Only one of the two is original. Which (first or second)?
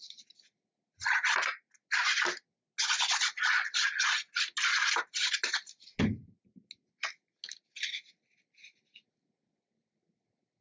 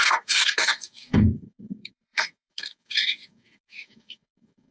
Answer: first